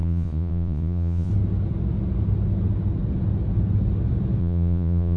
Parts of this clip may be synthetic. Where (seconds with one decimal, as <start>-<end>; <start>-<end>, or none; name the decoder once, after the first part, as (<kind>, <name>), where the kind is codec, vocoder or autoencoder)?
0.0-1.3 (vocoder, Vocos); 4.4-5.2